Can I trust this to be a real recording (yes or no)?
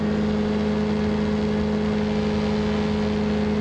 yes